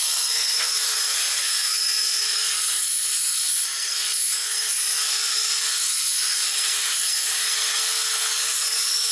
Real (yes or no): no